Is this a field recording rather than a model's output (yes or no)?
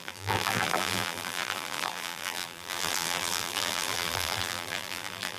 no